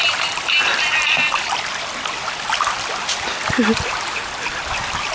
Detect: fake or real real